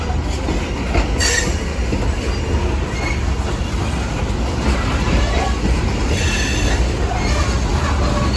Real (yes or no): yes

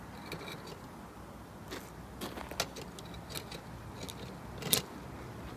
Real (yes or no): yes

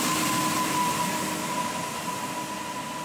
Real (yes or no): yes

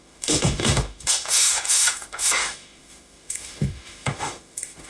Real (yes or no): no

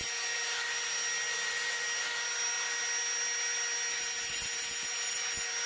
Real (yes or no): yes